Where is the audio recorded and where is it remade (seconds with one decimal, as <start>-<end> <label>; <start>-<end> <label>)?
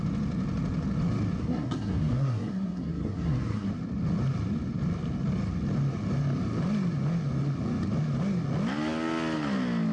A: 0.0-1.4 recorded; 1.4-3.7 remade; 3.7-9.9 recorded